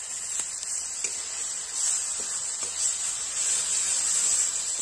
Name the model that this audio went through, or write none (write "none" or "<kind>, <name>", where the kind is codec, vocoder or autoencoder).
none